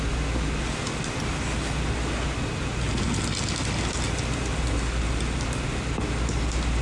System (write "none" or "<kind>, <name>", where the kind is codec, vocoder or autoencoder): none